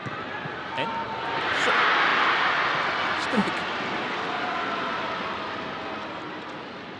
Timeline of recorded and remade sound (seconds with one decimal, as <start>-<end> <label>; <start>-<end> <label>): 0.0-3.4 recorded; 3.4-4.7 remade; 4.7-7.0 recorded

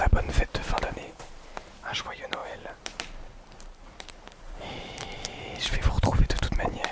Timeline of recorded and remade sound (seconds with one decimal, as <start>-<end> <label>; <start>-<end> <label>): 0.0-2.4 recorded; 2.4-6.5 remade; 6.5-6.9 recorded

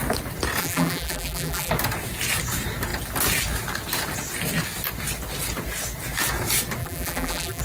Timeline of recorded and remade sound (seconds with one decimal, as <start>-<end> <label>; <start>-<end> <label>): 0.0-0.6 recorded; 0.6-1.7 remade; 1.7-6.8 recorded; 6.8-7.6 remade